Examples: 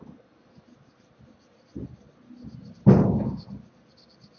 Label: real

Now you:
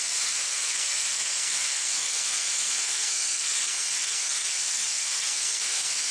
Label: fake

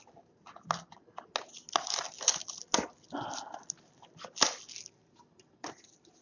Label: real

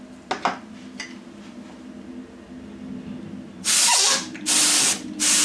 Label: real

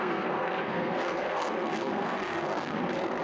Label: fake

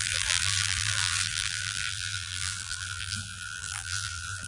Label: fake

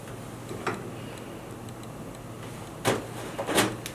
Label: real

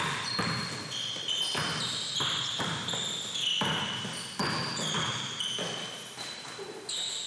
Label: real